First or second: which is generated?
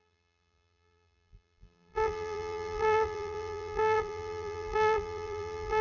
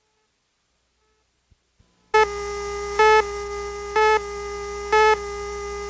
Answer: first